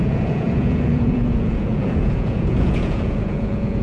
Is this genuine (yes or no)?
no